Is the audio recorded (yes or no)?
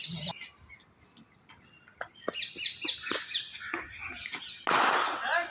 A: yes